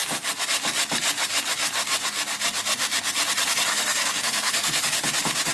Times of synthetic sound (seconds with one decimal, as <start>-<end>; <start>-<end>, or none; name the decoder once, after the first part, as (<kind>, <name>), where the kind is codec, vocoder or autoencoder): 3.7-4.8 (codec, SNAC)